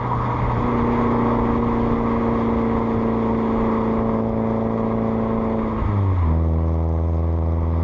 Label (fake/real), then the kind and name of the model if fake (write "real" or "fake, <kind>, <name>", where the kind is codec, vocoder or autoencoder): real